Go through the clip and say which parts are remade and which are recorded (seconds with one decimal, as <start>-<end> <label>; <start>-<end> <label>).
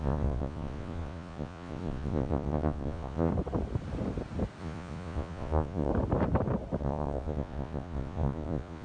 0.0-3.3 remade; 3.3-4.6 recorded; 4.6-5.9 remade; 5.9-6.8 recorded; 6.8-8.8 remade